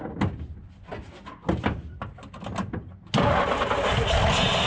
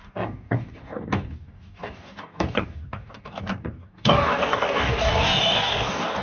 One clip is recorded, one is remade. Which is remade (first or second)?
second